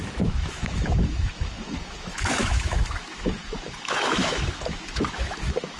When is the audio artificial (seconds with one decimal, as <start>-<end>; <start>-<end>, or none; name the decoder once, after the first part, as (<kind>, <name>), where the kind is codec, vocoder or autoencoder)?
0.0-5.8 (autoencoder, DAC-VAE)